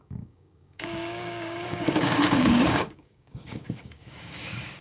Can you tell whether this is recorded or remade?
remade